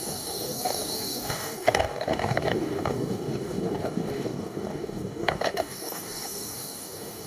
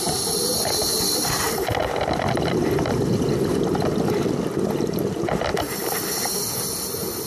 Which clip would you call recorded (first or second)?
second